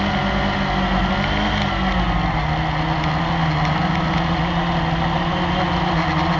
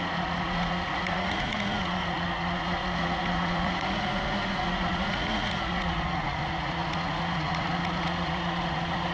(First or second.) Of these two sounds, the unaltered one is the first